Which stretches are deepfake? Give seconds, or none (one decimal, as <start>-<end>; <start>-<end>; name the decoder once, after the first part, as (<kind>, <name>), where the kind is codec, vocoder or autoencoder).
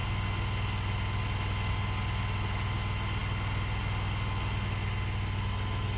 none